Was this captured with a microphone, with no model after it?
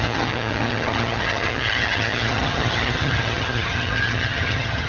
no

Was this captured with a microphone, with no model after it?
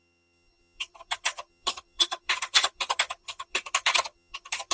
no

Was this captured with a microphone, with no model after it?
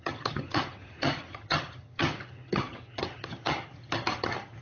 no